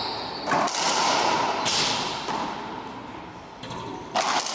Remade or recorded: recorded